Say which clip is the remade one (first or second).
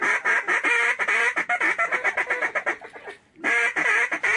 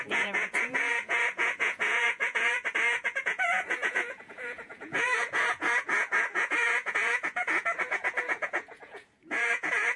second